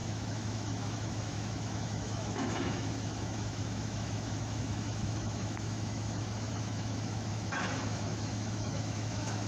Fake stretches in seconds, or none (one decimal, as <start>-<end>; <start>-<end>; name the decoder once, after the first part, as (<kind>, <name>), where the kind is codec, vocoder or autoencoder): 0.0-9.5 (autoencoder, DAC-VAE)